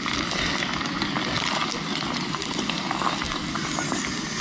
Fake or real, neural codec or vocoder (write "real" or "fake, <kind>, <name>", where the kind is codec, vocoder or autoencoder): real